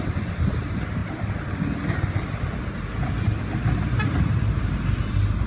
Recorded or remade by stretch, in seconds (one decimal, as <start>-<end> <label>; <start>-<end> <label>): 0.0-5.5 recorded